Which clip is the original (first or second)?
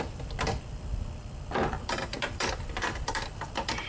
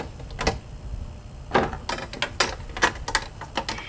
second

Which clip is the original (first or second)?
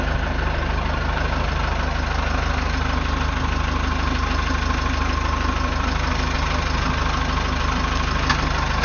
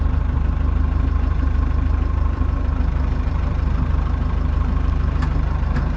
first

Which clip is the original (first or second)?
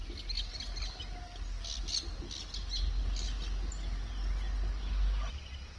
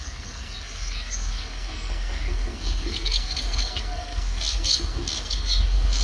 first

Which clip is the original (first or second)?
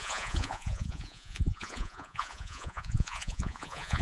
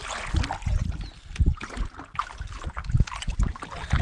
second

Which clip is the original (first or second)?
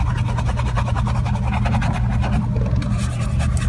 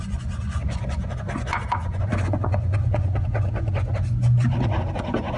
first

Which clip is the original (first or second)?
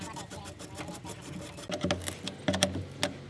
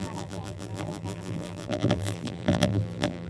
first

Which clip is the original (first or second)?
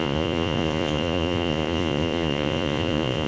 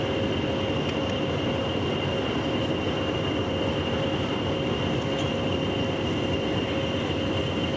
second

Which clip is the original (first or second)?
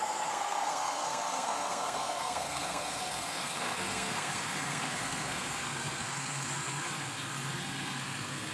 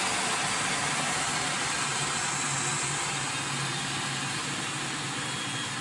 second